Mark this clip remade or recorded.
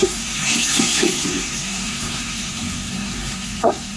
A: remade